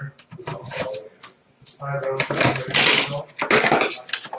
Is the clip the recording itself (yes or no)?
yes